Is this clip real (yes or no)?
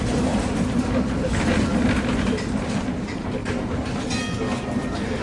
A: yes